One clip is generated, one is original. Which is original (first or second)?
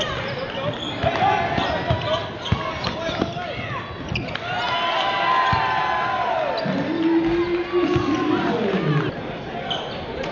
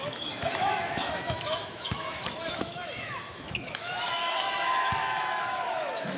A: first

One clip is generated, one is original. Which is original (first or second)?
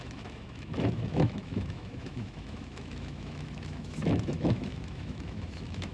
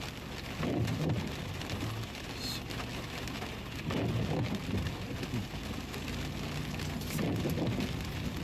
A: second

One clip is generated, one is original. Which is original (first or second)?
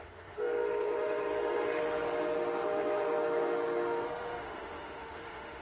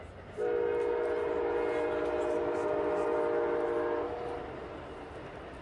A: second